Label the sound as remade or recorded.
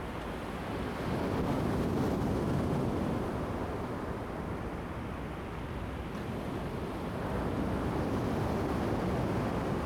recorded